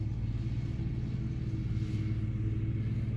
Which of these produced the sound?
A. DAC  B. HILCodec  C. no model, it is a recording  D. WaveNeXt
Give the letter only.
C